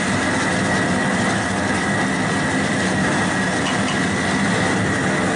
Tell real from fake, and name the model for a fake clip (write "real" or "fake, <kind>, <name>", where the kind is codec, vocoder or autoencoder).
real